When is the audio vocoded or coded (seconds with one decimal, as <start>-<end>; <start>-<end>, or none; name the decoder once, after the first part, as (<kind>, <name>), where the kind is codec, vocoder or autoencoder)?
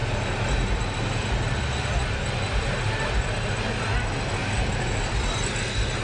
4.4-5.1 (vocoder, BigVGAN v2)